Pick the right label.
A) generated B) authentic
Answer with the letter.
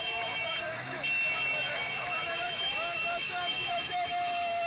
A